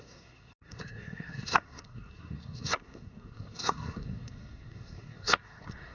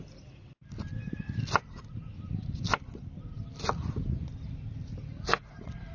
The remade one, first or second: first